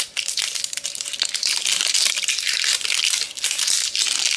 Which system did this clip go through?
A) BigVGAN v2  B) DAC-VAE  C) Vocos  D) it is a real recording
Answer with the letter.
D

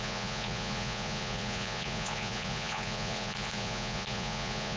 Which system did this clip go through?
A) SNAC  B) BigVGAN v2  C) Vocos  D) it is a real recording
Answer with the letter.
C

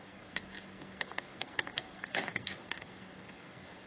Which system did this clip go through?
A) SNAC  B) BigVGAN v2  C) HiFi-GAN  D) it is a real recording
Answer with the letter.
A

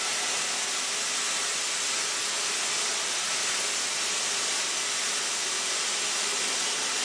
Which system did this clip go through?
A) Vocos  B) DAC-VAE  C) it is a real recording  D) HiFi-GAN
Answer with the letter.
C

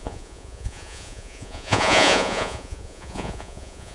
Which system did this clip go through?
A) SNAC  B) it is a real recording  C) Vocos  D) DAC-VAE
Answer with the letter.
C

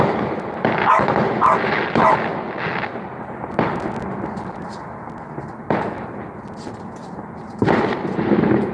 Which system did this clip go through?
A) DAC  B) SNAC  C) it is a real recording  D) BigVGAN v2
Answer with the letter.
C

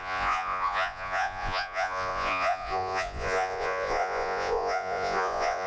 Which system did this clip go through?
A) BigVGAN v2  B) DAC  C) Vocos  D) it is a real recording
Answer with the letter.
C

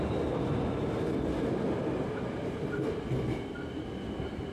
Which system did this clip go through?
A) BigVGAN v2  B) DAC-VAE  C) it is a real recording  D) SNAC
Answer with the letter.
C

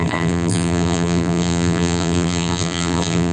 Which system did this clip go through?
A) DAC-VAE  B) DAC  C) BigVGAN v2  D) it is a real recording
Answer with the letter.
C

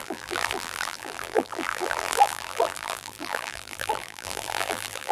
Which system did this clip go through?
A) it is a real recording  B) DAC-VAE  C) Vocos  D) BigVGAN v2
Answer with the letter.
D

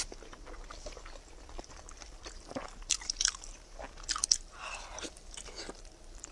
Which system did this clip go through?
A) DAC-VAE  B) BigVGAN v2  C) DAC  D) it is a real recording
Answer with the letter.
D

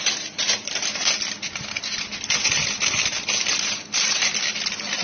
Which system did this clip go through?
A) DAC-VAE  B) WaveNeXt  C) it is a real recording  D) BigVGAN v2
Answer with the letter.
C